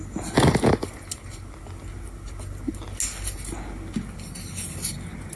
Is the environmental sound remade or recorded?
recorded